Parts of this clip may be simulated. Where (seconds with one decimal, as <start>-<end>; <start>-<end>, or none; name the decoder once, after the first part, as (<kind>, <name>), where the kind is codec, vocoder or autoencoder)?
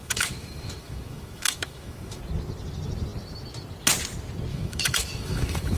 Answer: 0.0-2.2 (autoencoder, DAC-VAE); 4.5-5.8